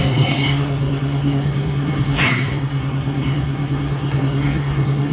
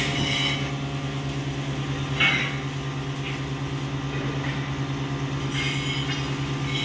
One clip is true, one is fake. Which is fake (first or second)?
first